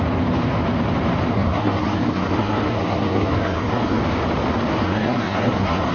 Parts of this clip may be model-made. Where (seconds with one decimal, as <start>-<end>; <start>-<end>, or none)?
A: 1.3-4.0; 4.8-5.9